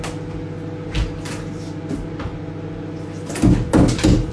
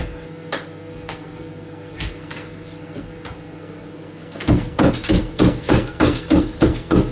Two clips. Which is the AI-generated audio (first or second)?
second